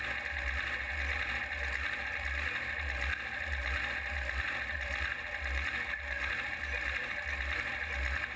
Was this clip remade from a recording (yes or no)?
no